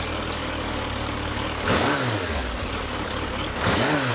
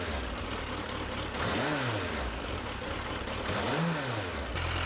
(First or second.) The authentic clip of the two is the second